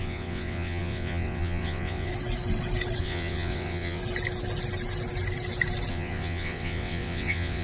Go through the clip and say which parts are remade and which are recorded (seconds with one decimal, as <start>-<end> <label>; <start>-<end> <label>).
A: 0.0-2.1 remade; 2.1-3.0 recorded; 3.0-4.0 remade; 4.0-5.9 recorded; 5.9-7.6 remade